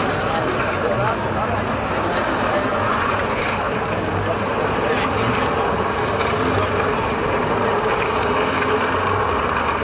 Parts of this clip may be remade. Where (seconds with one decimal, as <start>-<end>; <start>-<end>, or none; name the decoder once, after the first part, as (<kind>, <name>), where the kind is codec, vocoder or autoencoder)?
2.7-3.4 (vocoder, Vocos)